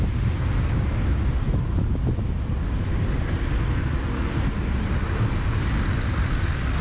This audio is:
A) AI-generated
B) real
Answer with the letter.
B